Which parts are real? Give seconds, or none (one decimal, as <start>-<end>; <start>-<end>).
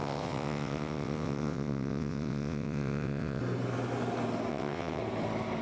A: 3.4-4.5; 5.0-5.6